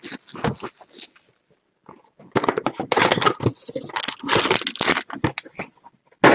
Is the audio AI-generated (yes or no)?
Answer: no